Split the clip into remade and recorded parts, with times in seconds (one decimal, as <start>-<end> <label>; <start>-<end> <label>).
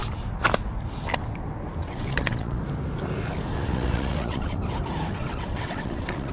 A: 0.0-1.8 recorded; 1.8-2.6 remade; 2.6-3.5 recorded; 3.5-4.6 remade; 4.6-5.2 recorded; 5.2-6.3 remade